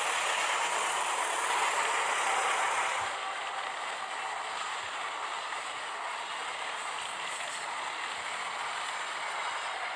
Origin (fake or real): real